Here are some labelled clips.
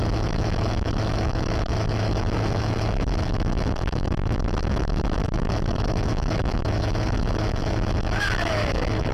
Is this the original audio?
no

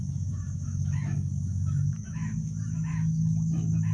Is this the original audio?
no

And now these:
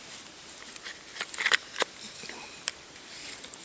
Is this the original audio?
yes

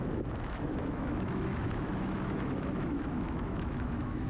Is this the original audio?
no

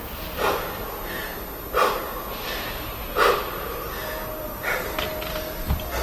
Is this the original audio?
yes